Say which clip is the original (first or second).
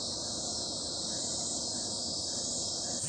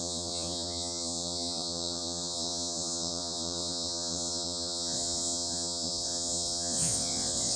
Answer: first